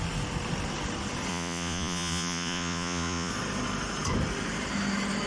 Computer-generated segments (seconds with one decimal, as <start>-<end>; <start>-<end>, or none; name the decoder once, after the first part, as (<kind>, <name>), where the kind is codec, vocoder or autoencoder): 1.3-3.3 (vocoder, Vocos)